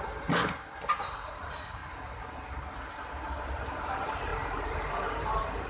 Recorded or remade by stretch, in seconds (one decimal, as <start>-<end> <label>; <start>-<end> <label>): 0.0-0.4 remade; 0.4-1.0 recorded; 1.0-1.8 remade; 1.8-3.4 recorded; 3.4-5.7 remade